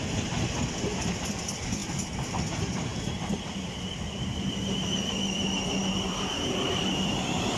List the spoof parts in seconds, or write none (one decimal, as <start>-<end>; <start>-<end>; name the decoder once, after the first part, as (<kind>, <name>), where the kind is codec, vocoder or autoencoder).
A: 0.0-1.8 (vocoder, BigVGAN v2); 2.4-2.9; 4.5-7.6